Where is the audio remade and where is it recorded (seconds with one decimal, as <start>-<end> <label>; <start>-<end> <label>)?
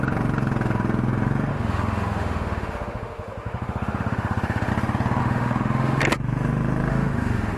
0.0-1.5 recorded; 1.5-4.7 remade; 4.7-5.2 recorded; 5.2-6.0 remade; 6.0-6.9 recorded; 6.9-7.6 remade